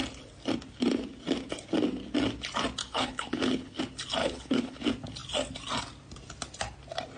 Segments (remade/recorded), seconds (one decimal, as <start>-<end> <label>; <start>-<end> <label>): 0.0-2.8 recorded; 2.8-3.8 remade; 3.8-4.2 recorded; 4.2-4.8 remade; 4.8-7.2 recorded